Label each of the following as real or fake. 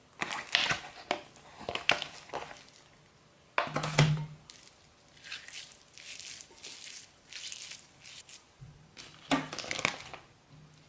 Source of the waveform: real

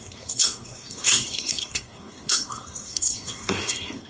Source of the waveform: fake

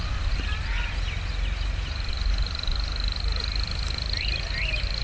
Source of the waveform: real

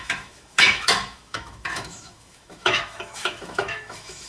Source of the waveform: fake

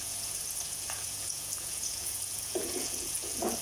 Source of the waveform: fake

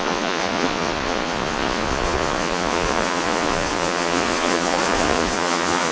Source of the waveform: fake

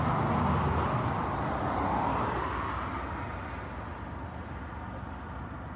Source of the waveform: real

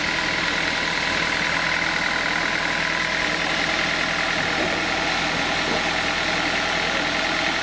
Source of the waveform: real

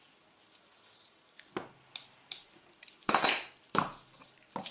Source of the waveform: real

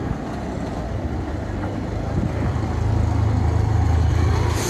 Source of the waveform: real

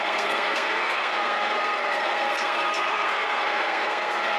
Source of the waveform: fake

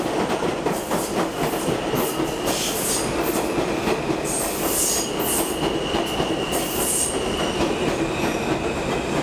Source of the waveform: real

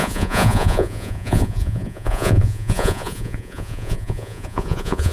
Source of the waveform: fake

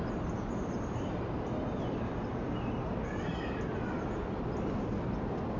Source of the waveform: real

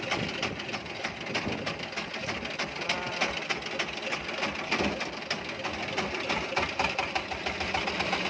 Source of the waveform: real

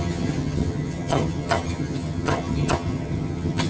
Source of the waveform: fake